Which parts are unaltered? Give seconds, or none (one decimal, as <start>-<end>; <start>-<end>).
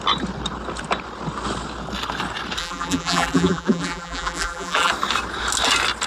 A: 0.0-2.6; 4.9-6.1